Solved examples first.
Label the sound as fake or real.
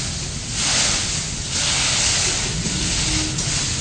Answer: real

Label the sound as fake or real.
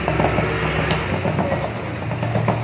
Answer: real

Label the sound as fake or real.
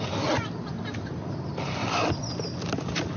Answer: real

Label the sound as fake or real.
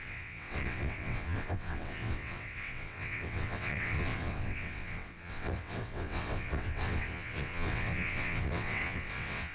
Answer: fake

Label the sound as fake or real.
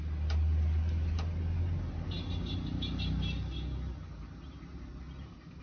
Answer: real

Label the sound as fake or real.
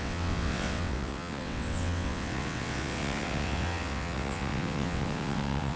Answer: fake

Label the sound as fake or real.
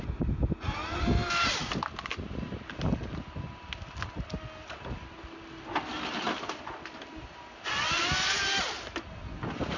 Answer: real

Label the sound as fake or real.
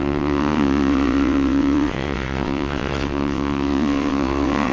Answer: fake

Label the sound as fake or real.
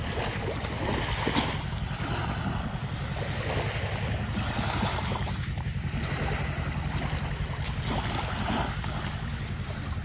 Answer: real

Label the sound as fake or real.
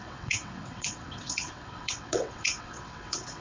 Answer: fake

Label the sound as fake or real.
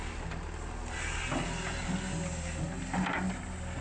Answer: real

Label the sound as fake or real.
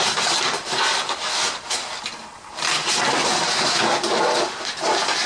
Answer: real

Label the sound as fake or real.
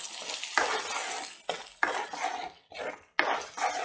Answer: real